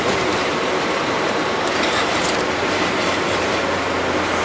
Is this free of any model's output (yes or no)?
no